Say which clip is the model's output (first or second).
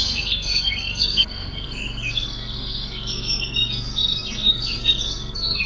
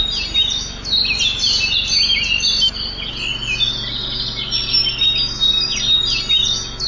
first